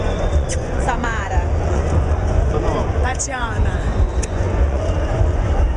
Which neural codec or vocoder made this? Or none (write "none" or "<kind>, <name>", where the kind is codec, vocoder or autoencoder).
vocoder, Vocos